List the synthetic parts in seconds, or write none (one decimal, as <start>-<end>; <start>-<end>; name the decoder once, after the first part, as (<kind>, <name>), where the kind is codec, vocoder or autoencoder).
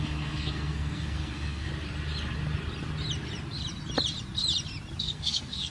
0.0-1.7 (codec, SNAC); 5.0-5.7